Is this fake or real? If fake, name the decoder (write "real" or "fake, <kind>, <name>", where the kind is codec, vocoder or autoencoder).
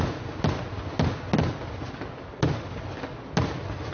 real